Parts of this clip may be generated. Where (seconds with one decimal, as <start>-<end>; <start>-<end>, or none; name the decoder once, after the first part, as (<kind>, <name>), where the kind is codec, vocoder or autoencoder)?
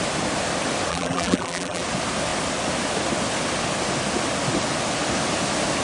0.9-1.8 (vocoder, BigVGAN v2)